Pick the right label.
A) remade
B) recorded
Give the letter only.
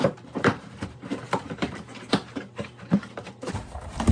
A